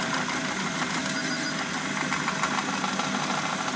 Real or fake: real